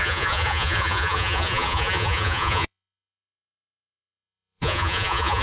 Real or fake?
fake